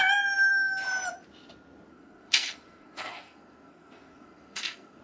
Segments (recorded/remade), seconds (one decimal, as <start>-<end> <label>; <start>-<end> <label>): 0.0-1.9 recorded; 1.9-5.0 remade